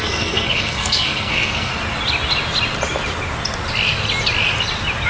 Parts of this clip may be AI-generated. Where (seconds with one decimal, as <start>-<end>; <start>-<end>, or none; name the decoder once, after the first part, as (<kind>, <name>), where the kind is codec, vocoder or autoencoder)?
0.0-1.7 (codec, SNAC)